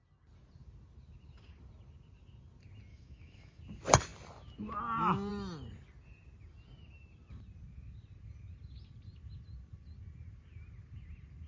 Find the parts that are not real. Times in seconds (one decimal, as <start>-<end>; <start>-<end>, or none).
2.9-3.6